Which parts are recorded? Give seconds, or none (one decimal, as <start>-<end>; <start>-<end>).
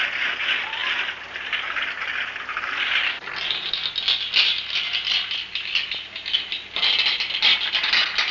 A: 0.0-8.3